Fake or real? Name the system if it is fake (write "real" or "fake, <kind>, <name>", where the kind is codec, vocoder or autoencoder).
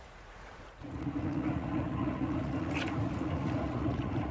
fake, vocoder, Vocos